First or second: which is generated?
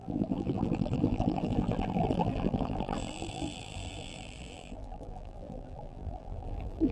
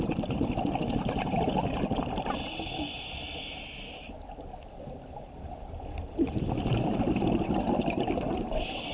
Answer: first